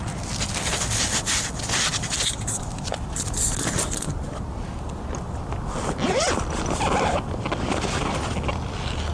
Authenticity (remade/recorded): recorded